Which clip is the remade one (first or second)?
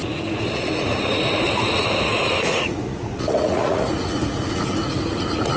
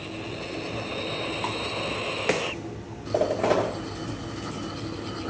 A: first